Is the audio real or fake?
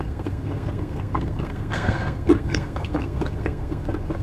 fake